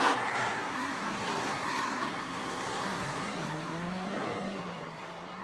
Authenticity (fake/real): fake